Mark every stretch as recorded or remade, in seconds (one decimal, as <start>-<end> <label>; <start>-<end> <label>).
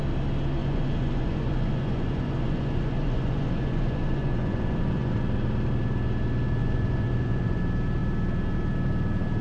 0.0-0.6 recorded; 0.6-5.2 remade; 5.2-6.6 recorded; 6.6-7.6 remade; 7.6-9.4 recorded